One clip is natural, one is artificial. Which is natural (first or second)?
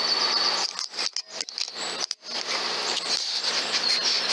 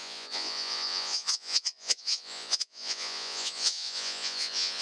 first